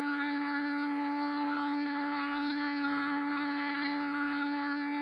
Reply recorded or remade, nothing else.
remade